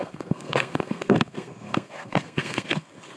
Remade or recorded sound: remade